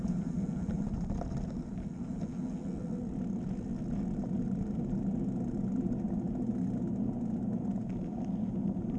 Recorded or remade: recorded